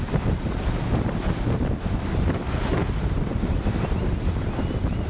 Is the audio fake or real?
real